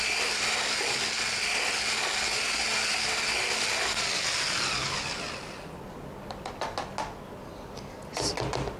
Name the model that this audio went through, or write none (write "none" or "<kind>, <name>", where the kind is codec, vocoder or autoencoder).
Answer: none